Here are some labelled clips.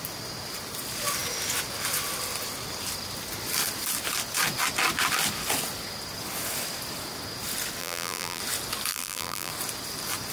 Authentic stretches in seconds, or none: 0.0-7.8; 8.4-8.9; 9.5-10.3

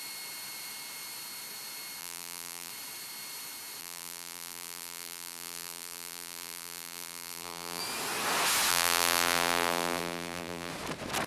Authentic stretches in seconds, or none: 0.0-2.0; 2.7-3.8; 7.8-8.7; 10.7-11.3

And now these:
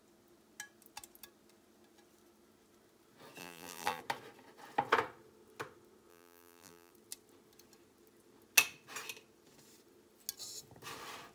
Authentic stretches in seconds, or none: 0.0-3.4; 4.0-6.1; 6.9-11.3

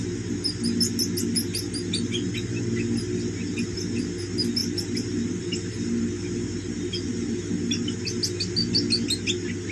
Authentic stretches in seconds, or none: 0.0-4.6; 7.5-9.7

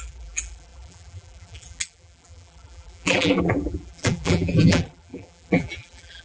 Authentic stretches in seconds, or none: none

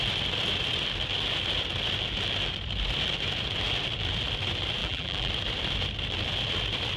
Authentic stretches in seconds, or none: 0.0-4.8; 5.3-7.0